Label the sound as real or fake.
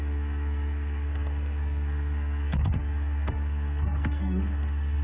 fake